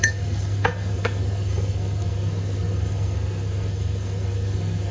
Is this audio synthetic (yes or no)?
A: yes